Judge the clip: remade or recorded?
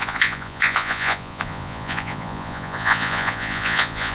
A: remade